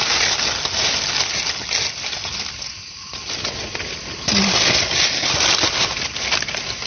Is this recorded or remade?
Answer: recorded